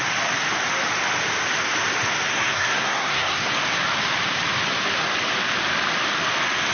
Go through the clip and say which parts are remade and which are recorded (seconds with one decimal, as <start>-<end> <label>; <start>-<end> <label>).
0.0-2.3 recorded; 2.3-3.5 remade; 3.5-6.7 recorded